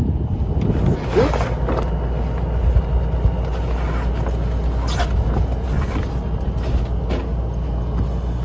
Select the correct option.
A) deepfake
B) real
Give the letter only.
B